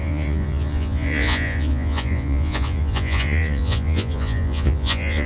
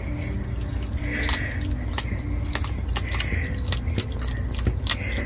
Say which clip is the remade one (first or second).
first